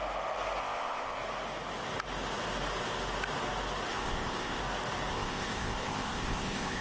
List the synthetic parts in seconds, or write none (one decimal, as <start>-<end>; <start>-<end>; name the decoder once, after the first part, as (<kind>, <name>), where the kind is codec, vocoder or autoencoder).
0.6-1.2 (codec, ZipCodec); 3.9-4.6; 5.1-6.8